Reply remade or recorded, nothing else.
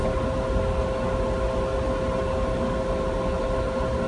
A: recorded